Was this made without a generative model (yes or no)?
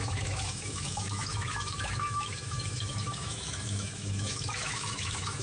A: no